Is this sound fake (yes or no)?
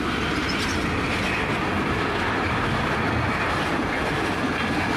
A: no